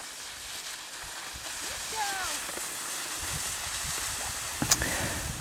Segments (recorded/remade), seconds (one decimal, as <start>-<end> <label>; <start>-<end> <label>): 0.0-0.8 recorded; 0.8-2.1 remade; 2.1-4.5 recorded; 4.5-5.4 remade